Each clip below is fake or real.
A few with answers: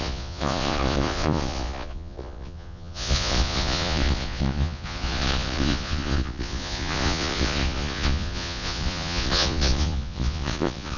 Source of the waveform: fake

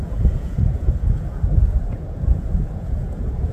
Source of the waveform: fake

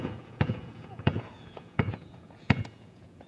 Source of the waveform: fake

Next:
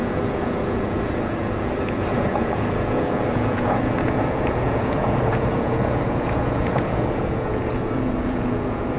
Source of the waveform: fake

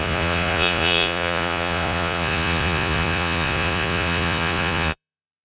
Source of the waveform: fake